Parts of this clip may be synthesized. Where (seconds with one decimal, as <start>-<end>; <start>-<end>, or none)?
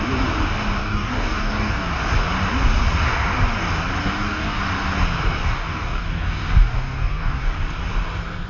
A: 0.8-1.9; 4.0-4.6; 5.4-7.5